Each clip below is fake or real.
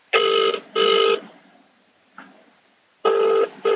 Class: fake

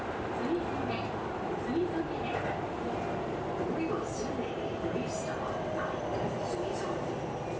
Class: fake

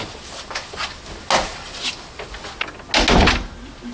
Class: real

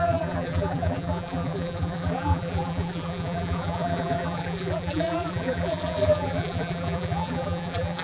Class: fake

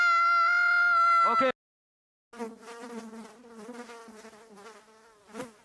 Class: real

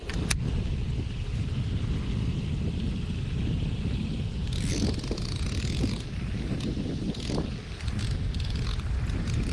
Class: real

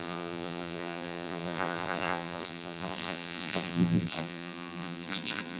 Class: fake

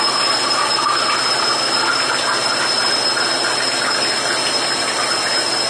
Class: real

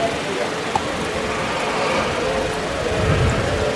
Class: real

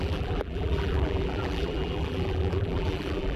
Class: fake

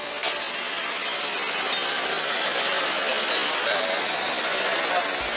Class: real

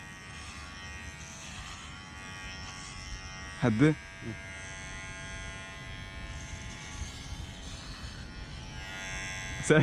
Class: real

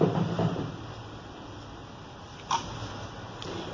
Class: fake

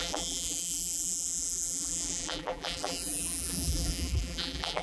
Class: fake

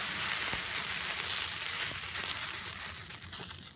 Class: real